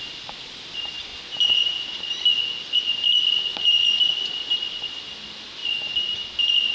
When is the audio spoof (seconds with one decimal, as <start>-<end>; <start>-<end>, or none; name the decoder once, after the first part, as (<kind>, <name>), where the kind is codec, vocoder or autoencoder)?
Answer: none

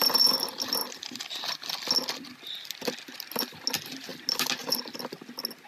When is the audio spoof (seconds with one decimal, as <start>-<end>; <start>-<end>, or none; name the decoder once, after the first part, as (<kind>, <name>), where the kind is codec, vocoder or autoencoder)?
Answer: none

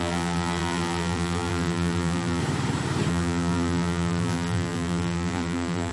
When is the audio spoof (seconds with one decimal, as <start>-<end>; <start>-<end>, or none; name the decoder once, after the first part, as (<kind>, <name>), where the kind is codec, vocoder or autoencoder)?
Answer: 0.0-2.4 (vocoder, BigVGAN v2); 3.1-5.9